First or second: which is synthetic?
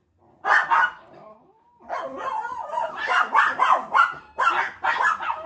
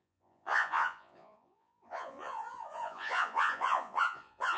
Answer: second